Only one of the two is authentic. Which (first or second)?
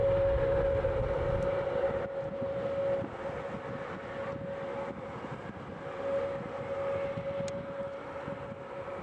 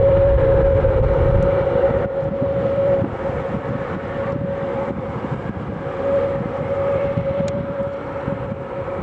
first